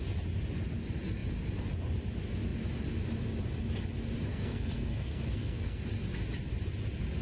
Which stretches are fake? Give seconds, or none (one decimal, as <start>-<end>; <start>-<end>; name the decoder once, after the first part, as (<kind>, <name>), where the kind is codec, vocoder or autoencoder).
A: 4.3-5.8 (codec, SNAC)